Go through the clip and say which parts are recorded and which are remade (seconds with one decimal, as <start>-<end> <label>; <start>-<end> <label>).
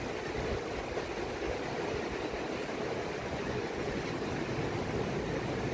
0.0-3.2 recorded; 3.2-4.0 remade; 4.0-5.7 recorded